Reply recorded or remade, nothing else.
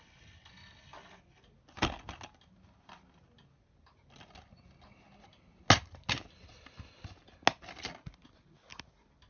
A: recorded